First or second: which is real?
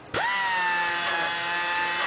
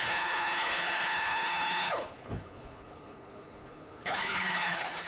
first